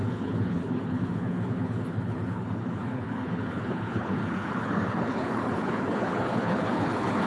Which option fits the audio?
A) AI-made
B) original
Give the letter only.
A